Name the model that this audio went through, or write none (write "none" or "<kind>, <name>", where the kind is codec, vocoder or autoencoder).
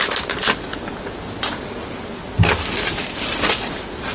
none